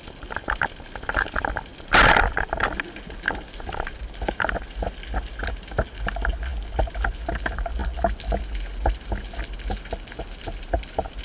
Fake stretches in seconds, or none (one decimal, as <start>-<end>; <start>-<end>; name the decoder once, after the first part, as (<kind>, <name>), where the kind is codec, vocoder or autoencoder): none

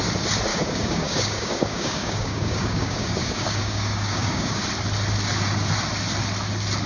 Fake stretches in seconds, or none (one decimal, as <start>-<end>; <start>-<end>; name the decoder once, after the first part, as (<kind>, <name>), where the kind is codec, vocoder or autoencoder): 0.5-4.6 (codec, DAC)

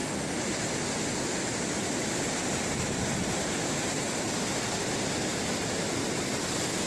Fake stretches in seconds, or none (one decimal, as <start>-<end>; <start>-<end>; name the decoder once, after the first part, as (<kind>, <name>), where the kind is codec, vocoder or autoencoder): none

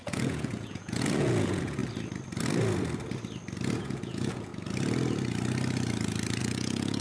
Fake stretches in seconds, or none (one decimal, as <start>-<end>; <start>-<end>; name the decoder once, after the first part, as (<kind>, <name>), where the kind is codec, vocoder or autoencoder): 0.0-1.8 (vocoder, Vocos); 3.8-4.5; 6.4-7.0